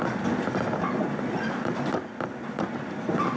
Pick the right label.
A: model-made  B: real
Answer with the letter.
B